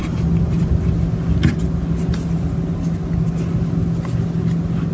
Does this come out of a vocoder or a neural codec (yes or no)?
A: no